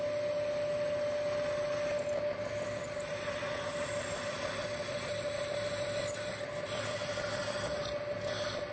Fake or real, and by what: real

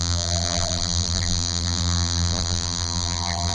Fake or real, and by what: fake, vocoder, BigVGAN v2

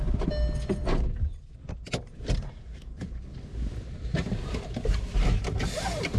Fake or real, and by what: real